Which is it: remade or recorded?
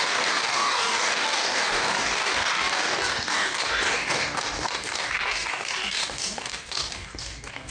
remade